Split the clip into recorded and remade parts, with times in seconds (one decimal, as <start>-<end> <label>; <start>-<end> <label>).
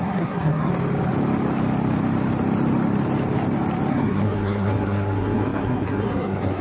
0.0-0.7 remade; 0.7-3.9 recorded; 3.9-6.6 remade